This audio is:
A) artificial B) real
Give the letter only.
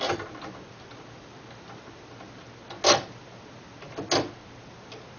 B